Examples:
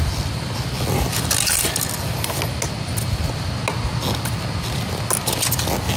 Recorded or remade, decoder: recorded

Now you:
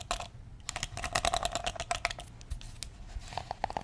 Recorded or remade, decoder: recorded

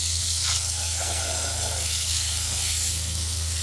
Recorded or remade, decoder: remade, codec, SNAC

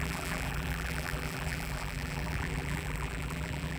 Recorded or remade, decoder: remade, vocoder, BigVGAN v2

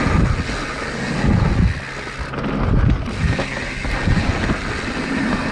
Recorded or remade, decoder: recorded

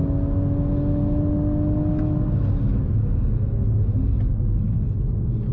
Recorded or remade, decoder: recorded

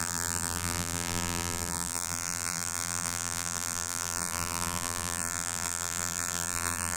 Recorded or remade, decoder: remade, vocoder, BigVGAN v2